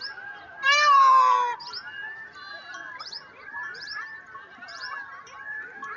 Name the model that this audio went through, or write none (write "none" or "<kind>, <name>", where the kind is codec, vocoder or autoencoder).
vocoder, BigVGAN v2